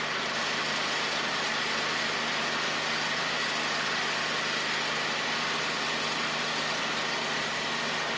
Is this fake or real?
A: real